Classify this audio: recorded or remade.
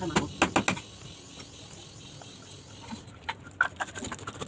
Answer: recorded